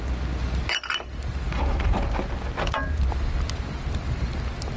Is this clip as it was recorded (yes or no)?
yes